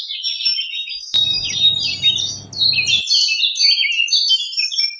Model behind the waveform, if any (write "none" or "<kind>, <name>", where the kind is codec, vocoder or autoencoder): none